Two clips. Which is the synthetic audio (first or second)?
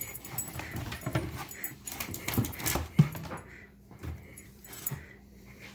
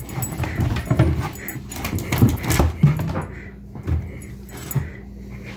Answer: first